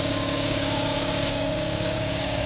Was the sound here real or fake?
fake